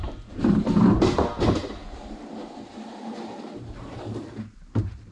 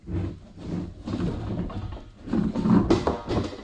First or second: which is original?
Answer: second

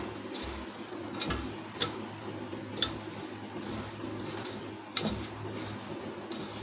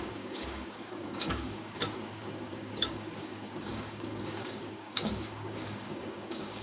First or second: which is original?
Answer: first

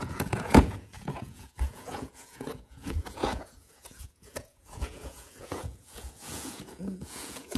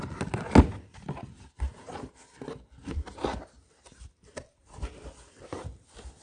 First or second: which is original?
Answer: second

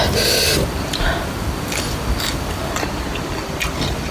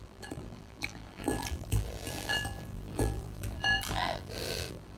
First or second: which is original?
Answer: first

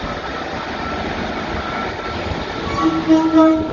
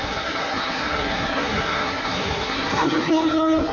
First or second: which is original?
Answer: first